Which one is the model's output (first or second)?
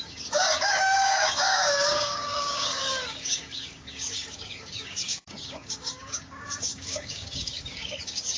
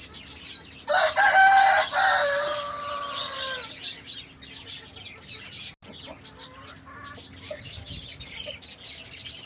first